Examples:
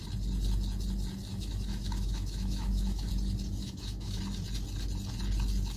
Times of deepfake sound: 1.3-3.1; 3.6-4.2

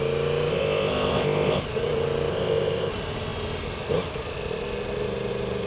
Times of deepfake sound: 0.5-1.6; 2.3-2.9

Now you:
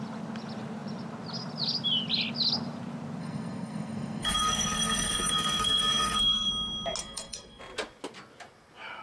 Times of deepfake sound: 3.2-6.5; 7.0-7.6

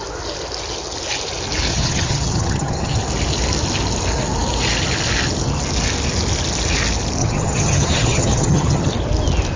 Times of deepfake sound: 1.7-3.0; 7.2-8.9

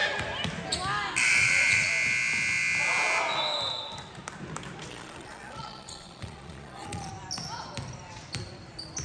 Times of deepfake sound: 1.4-1.9; 4.9-7.1